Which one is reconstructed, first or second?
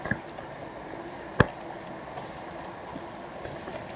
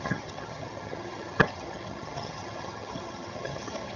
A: second